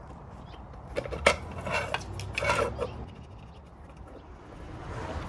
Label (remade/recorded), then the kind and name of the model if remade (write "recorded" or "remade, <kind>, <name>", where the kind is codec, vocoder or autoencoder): recorded